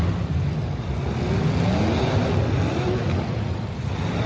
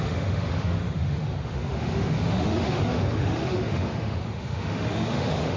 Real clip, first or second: first